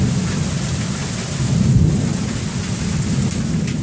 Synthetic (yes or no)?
yes